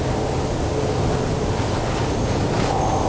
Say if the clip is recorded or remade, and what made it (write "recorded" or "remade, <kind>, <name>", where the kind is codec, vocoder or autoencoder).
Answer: recorded